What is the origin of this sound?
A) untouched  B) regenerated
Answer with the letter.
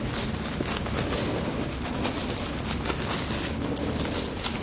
A